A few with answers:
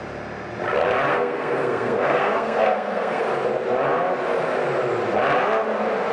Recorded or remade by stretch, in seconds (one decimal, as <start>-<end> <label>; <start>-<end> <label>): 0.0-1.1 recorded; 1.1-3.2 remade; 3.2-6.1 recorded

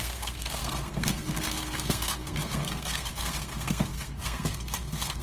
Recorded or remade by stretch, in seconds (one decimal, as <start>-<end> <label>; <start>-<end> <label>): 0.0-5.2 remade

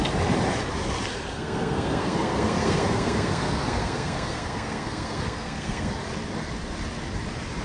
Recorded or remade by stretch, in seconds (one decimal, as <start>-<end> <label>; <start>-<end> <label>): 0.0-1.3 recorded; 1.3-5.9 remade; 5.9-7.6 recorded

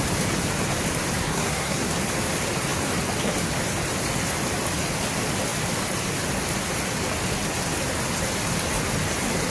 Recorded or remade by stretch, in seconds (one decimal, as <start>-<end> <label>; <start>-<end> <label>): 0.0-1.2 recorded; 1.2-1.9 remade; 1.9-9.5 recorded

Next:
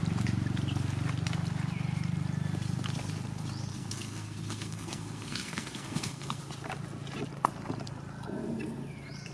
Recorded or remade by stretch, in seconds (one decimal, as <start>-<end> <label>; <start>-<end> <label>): 0.0-3.7 recorded; 3.7-6.4 remade; 6.4-9.3 recorded

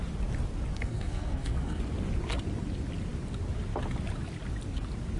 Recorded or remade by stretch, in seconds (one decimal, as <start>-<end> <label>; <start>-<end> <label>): 0.0-0.7 recorded; 0.7-1.8 remade; 1.8-5.2 recorded

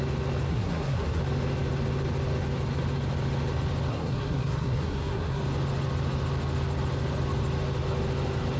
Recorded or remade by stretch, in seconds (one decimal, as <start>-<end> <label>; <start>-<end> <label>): 0.0-0.5 recorded; 0.5-1.2 remade; 1.2-3.9 recorded; 3.9-5.4 remade; 5.4-8.6 recorded

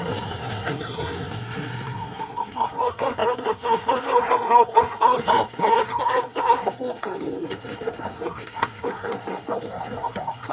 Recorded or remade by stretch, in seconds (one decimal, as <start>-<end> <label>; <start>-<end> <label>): 0.0-10.5 remade